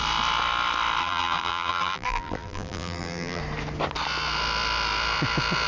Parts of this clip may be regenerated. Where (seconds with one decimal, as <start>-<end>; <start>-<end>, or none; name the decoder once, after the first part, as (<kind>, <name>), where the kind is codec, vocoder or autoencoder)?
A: 1.0-3.4 (vocoder, BigVGAN v2)